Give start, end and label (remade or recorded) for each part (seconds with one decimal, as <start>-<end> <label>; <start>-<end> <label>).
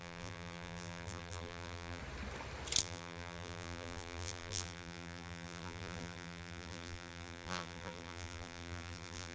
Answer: 0.0-2.0 remade; 2.0-2.8 recorded; 2.8-9.3 remade